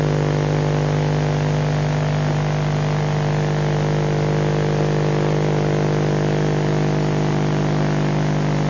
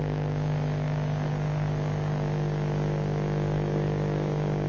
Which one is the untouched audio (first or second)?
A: first